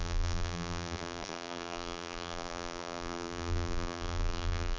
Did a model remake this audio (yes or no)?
yes